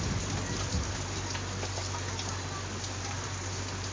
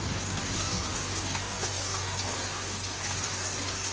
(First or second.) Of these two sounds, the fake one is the second